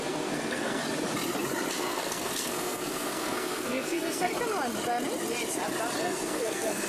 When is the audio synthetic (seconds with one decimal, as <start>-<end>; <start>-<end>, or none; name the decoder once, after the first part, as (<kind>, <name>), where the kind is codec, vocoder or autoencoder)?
0.0-0.8 (codec, SNAC); 1.7-4.3; 6.0-6.9